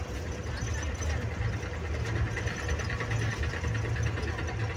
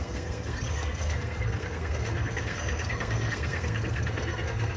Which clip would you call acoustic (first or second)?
first